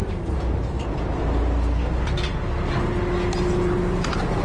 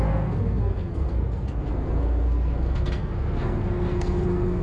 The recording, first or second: first